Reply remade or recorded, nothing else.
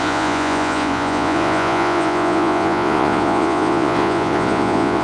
remade